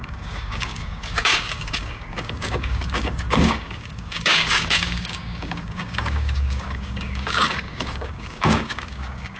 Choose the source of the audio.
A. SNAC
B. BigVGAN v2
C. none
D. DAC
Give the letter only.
D